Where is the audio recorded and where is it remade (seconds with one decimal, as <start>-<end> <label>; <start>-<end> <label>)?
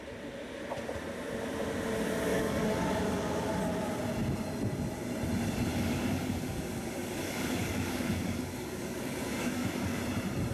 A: 0.0-2.3 recorded; 2.3-3.6 remade; 3.6-5.7 recorded; 5.7-10.0 remade; 10.0-10.5 recorded